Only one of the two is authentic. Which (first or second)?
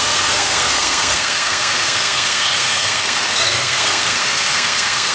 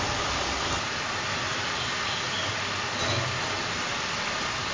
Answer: second